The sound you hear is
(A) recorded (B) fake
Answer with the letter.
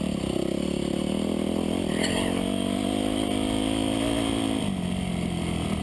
A